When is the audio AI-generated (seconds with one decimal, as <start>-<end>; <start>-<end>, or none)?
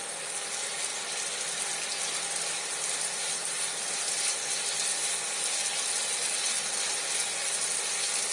0.9-5.4